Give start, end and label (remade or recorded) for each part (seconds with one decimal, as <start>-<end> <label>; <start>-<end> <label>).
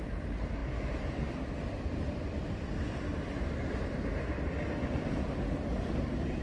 0.0-6.4 recorded